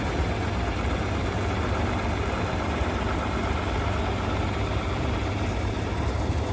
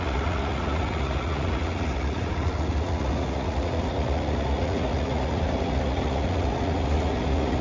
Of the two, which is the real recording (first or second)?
first